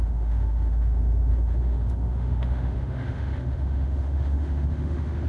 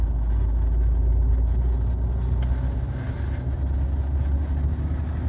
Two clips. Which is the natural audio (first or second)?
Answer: second